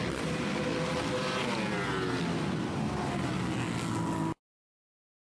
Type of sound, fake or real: real